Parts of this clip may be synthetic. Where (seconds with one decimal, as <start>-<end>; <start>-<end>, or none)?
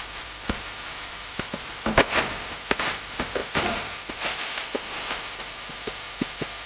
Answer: 0.9-1.5